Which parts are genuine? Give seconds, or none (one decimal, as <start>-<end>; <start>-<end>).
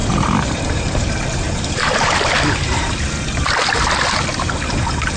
3.1-5.2